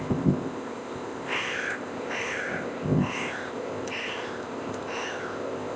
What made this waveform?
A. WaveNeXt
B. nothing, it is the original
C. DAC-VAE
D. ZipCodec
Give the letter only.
D